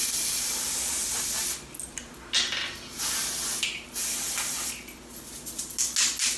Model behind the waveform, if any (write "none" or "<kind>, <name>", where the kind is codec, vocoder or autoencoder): none